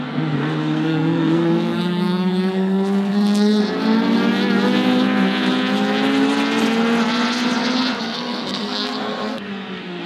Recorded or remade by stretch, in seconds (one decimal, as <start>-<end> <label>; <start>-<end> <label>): 0.0-3.6 remade; 3.6-8.0 recorded; 8.0-10.1 remade